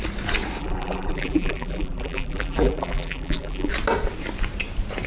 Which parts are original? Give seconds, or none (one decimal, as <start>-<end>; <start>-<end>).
0.0-0.6; 3.7-5.1